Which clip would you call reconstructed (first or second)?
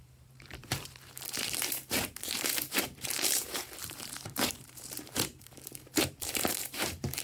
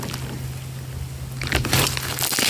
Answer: first